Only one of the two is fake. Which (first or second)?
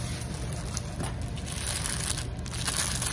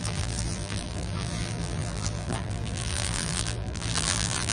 second